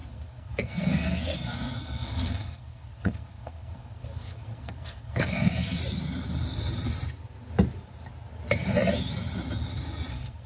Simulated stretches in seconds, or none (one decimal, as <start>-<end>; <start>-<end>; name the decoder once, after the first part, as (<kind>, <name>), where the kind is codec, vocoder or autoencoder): 0.0-5.8 (codec, SNAC); 10.1-10.5